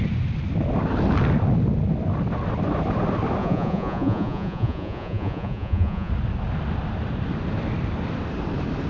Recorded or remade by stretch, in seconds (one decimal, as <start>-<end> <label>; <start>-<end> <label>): 0.0-3.4 recorded; 3.4-6.1 remade; 6.1-8.9 recorded